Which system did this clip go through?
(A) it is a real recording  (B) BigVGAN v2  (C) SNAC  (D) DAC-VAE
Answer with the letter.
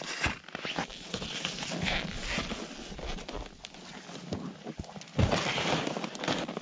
A